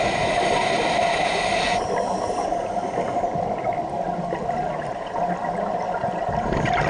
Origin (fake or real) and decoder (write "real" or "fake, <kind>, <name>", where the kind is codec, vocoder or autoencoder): real